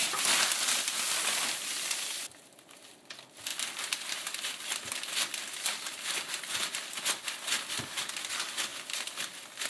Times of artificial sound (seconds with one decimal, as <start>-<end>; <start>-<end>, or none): none